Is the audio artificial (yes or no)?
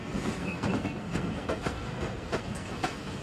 yes